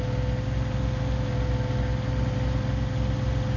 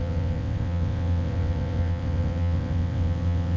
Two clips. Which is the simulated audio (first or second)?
second